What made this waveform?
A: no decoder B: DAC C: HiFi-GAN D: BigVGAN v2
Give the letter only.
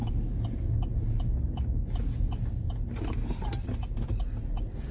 A